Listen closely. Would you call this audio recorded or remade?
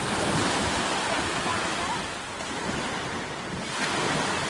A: recorded